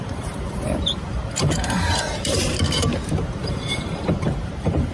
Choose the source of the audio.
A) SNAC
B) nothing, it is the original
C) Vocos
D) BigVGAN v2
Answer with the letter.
D